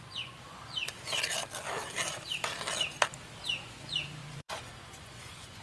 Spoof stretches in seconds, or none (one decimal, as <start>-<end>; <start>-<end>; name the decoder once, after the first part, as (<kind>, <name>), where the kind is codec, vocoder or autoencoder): 0.0-0.6 (vocoder, Vocos); 3.6-5.6